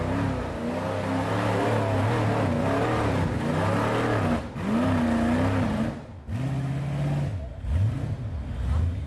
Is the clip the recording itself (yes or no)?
yes